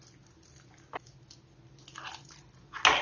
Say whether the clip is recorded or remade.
recorded